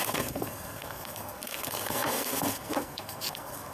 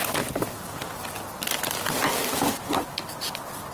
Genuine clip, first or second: second